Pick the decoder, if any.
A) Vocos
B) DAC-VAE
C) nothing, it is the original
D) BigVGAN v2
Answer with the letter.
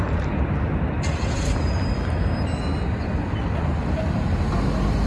C